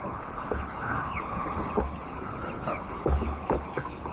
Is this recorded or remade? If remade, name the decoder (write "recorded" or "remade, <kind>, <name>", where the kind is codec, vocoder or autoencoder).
remade, codec, HILCodec